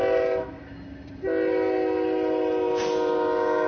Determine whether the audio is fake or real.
real